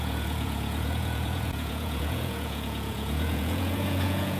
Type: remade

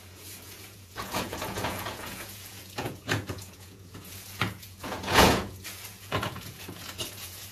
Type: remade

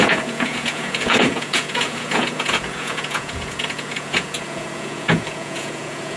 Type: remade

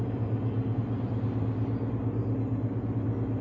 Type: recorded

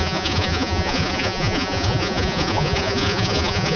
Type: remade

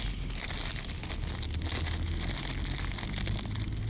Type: recorded